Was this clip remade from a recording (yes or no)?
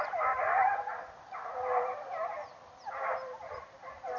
no